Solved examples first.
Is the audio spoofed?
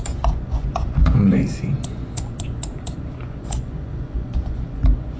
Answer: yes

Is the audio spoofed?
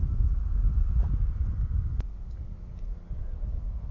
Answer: no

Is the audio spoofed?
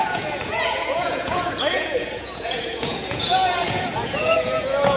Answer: yes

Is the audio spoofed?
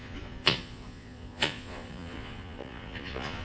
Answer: yes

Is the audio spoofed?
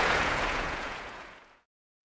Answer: yes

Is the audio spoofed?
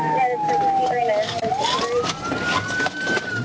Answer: no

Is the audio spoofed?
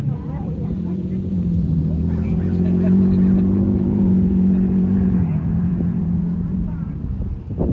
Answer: yes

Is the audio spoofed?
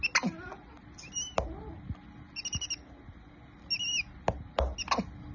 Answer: no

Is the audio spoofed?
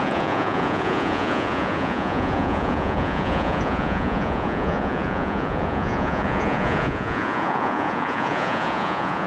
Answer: yes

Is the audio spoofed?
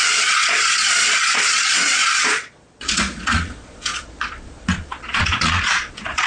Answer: yes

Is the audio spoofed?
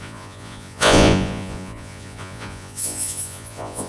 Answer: yes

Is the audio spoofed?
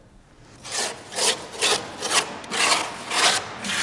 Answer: no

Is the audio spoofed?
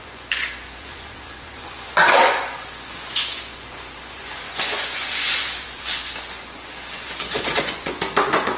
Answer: yes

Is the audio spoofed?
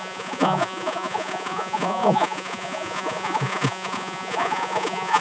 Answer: yes